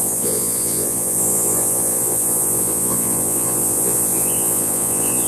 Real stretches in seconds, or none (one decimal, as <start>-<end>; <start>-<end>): none